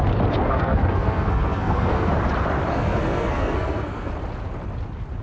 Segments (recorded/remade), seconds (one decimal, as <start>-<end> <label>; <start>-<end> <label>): 0.0-0.4 recorded; 0.4-2.1 remade; 2.1-2.7 recorded; 2.7-4.1 remade; 4.1-5.2 recorded